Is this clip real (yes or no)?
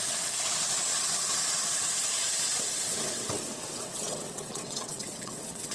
no